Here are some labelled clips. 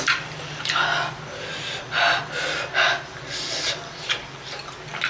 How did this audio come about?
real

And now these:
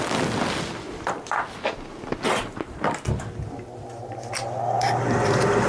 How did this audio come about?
real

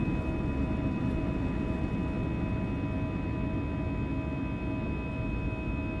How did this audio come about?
real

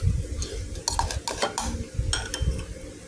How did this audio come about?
real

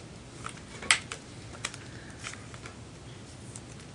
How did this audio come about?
real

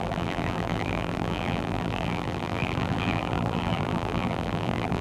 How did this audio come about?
fake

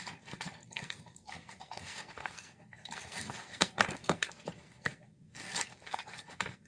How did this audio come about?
fake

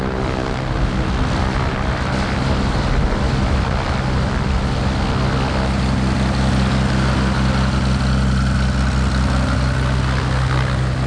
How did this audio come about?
real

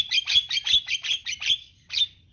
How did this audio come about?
real